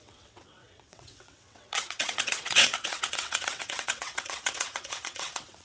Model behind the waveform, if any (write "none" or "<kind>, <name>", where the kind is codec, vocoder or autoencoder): vocoder, WaveNeXt